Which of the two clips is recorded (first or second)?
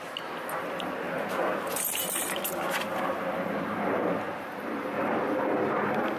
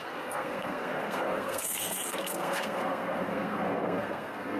first